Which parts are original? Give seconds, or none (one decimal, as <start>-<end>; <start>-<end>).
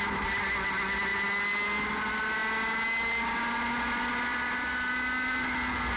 0.0-6.0